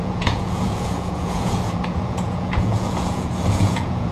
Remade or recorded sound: remade